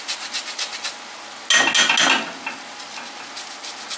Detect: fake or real real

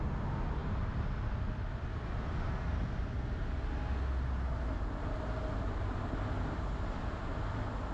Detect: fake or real real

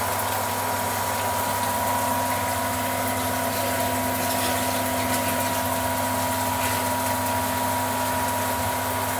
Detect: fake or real real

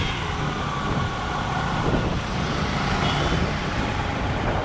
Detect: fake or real real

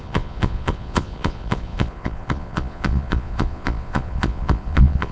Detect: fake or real fake